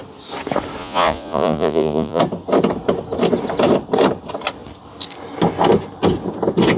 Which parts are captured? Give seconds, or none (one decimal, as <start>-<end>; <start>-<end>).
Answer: 0.0-0.8; 2.2-6.8